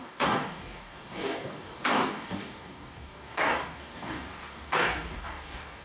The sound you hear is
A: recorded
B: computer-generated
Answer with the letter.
B